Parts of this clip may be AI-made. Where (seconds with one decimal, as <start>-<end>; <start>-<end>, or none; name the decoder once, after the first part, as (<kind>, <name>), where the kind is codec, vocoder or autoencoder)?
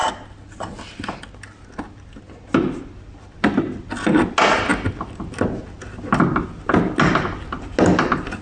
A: none